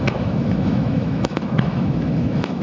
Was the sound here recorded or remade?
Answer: remade